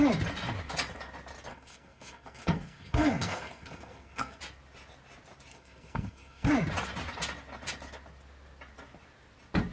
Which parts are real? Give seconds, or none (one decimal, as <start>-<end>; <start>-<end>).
0.0-1.5; 4.4-5.5; 6.5-9.7